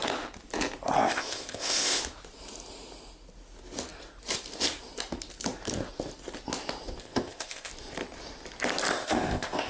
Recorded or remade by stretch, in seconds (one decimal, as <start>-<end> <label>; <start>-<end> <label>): 0.0-1.0 recorded; 1.0-2.0 remade; 2.0-7.0 recorded; 7.0-7.7 remade; 7.7-8.9 recorded; 8.9-9.7 remade